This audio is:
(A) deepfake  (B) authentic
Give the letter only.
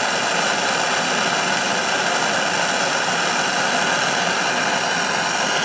B